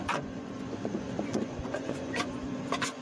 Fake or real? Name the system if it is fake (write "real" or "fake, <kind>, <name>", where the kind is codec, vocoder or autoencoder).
fake, vocoder, Vocos